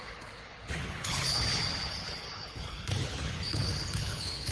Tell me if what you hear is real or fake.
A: fake